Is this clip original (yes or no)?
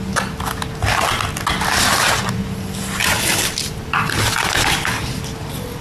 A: yes